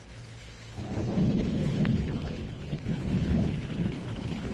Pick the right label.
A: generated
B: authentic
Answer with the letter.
A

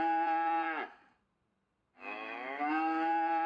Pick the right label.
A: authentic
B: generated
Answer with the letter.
B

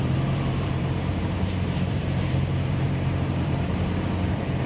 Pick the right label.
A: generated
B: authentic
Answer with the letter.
A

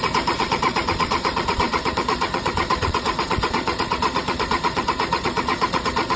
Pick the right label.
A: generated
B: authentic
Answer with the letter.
A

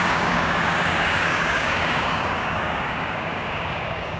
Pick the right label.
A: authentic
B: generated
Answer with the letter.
B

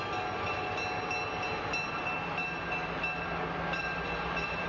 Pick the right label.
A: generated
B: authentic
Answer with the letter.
B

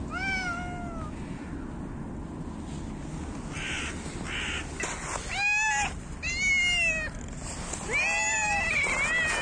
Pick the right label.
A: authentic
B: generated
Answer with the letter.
A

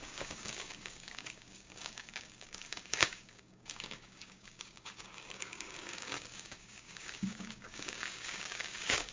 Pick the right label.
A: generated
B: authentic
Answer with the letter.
A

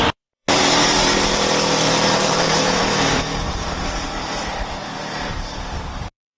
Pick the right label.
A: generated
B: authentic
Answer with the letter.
A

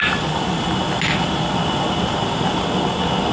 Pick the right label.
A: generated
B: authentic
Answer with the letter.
B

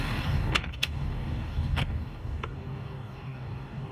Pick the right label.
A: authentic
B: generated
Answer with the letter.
B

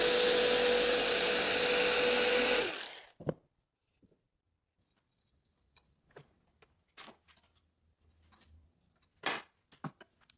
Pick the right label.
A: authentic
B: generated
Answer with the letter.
A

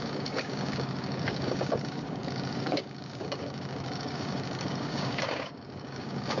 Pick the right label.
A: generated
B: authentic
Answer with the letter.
A